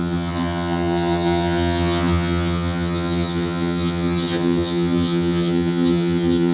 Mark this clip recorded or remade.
remade